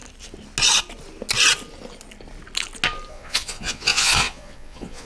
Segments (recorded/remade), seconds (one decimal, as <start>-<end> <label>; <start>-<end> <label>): 0.0-3.1 recorded; 3.1-5.1 remade